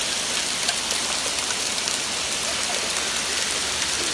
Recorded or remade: recorded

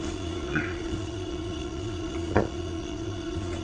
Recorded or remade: remade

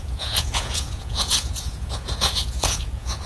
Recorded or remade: remade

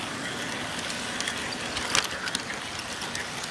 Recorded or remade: recorded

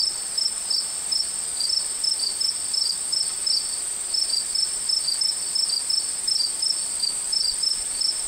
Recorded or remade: recorded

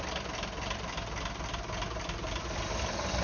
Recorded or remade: recorded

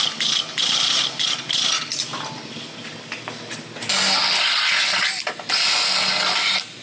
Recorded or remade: recorded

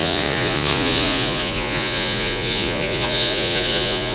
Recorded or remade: remade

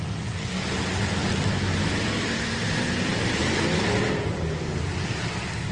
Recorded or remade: recorded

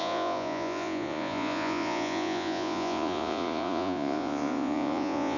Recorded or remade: remade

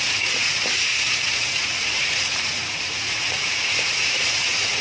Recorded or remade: remade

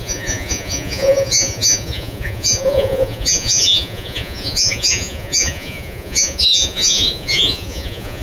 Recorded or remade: remade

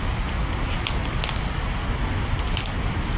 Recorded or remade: recorded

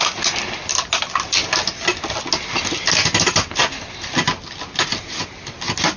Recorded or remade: recorded